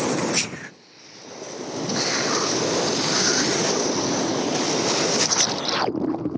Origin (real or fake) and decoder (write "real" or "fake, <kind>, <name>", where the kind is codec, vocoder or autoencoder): real